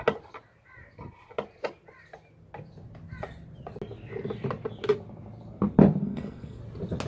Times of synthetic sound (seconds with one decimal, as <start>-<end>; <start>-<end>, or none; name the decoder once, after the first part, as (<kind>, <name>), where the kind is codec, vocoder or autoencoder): 6.0-6.6 (codec, SNAC)